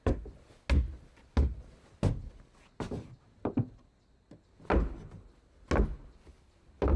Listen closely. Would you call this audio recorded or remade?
recorded